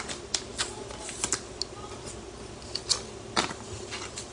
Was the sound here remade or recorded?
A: recorded